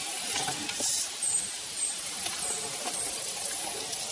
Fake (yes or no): no